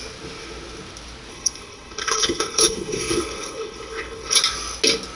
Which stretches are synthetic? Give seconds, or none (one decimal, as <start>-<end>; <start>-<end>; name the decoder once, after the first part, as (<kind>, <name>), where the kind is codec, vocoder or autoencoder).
1.3-4.4 (codec, HILCodec)